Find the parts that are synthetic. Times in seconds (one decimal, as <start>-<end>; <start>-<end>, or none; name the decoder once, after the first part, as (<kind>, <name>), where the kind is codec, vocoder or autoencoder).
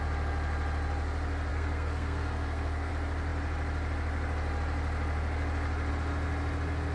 1.5-2.9 (codec, SNAC)